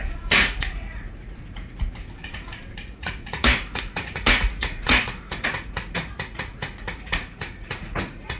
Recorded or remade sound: remade